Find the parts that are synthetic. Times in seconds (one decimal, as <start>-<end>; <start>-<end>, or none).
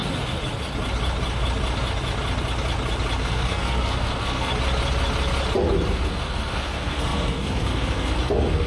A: 3.2-4.5; 5.9-8.7